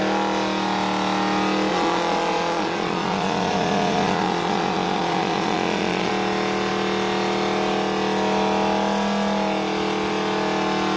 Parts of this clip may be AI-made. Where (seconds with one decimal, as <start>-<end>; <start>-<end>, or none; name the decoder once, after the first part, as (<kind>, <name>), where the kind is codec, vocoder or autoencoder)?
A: 1.7-6.1 (vocoder, Vocos)